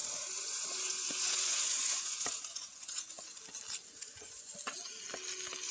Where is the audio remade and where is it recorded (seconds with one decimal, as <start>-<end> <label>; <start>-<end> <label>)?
0.0-3.4 remade; 3.4-3.8 recorded; 3.8-4.5 remade; 4.5-5.7 recorded